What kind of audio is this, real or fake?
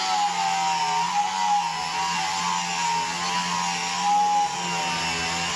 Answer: real